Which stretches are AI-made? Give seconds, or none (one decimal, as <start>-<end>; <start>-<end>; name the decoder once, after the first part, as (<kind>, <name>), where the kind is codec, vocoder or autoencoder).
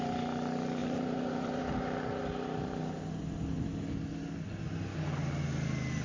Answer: 0.8-1.6 (vocoder, BigVGAN v2)